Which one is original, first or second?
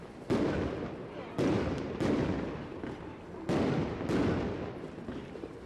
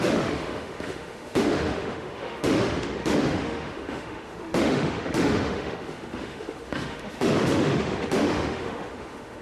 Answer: first